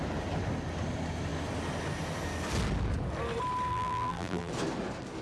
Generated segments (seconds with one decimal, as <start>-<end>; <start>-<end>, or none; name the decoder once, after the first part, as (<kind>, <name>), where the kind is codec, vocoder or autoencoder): 3.7-4.5 (vocoder, BigVGAN v2)